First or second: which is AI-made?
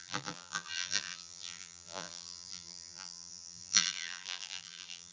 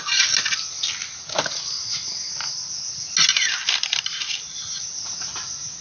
first